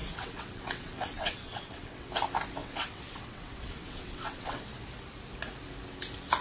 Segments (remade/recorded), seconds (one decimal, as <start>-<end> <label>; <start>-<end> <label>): 0.0-2.1 remade; 2.1-2.6 recorded; 2.6-4.6 remade; 4.6-6.4 recorded